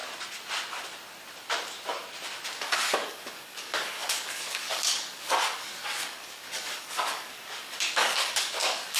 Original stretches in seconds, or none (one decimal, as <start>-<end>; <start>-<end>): 0.0-2.6